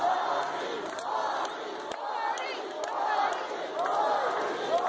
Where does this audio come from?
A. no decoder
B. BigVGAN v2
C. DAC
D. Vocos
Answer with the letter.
A